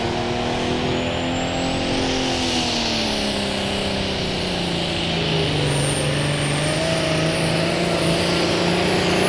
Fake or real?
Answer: real